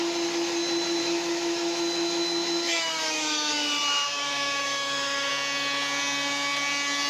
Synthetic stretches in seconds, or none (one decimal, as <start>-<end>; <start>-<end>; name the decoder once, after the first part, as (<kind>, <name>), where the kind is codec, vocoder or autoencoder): 1.0-5.3 (autoencoder, DAC-VAE)